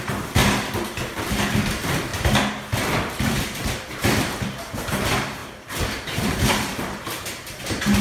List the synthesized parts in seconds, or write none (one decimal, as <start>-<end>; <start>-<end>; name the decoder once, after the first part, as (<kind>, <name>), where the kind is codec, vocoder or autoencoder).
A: 0.0-0.4 (vocoder, BigVGAN v2); 1.2-2.1; 2.8-8.0